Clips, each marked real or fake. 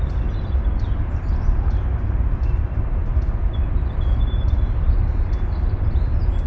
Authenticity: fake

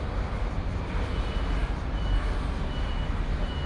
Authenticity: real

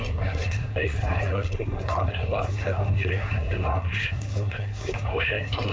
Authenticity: fake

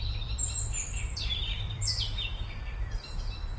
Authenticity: fake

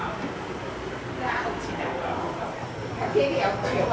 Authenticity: real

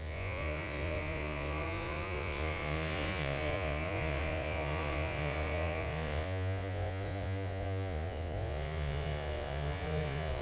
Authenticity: fake